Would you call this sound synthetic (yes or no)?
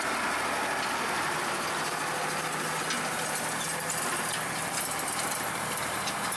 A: no